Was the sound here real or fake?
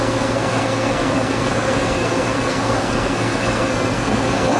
fake